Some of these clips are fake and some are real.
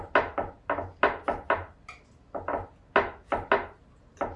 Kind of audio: real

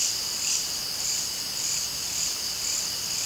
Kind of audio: real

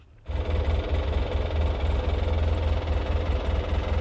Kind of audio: real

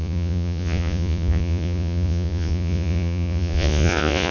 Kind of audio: fake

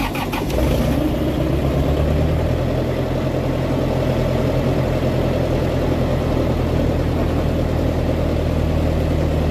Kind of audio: real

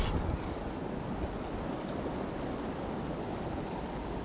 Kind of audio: real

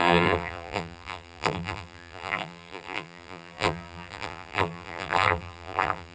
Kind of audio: fake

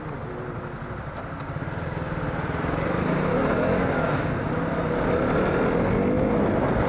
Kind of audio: real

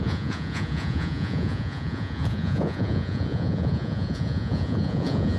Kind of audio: fake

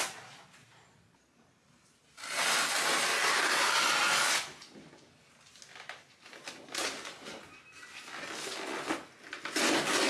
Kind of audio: real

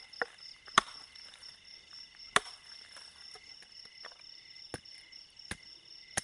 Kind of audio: real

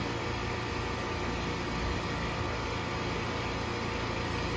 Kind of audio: real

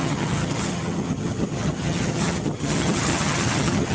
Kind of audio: fake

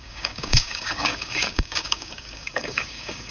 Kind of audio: fake